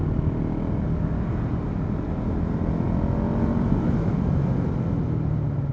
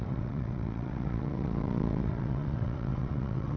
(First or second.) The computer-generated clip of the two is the second